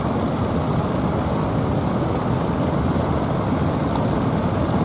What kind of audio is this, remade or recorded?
recorded